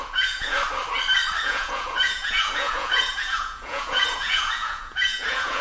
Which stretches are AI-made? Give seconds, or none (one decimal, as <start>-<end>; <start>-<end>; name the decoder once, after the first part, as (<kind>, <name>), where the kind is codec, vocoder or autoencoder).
0.0-0.6 (vocoder, Vocos); 1.4-5.6